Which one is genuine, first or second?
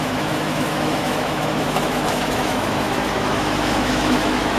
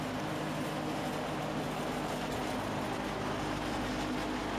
second